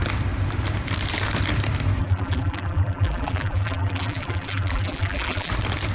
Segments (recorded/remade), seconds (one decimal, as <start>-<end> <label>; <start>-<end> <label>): 0.0-2.0 recorded; 2.0-5.5 remade; 5.5-5.9 recorded